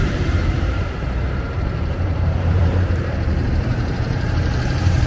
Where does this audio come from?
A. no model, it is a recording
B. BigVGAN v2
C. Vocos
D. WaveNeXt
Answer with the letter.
B